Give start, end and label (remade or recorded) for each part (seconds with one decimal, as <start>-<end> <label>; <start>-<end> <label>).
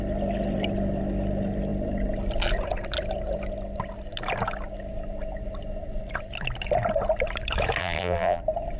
0.0-7.8 recorded; 7.8-8.4 remade; 8.4-8.8 recorded